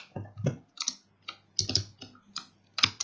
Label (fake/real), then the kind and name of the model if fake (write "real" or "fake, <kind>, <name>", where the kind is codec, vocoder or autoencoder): real